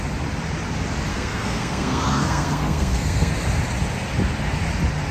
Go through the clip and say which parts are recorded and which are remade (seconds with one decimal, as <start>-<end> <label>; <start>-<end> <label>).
0.0-1.1 recorded; 1.1-3.3 remade; 3.3-5.1 recorded